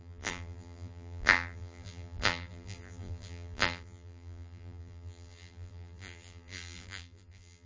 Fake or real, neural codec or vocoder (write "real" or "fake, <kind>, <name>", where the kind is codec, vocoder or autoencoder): fake, vocoder, BigVGAN v2